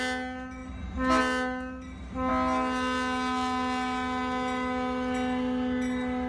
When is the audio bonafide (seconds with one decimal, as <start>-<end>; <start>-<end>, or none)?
0.0-6.3